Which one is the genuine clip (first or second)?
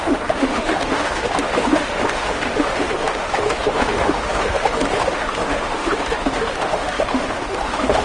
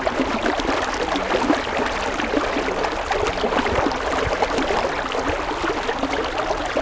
second